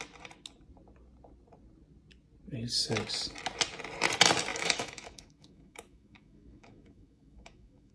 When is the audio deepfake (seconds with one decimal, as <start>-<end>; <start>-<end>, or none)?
4.5-7.9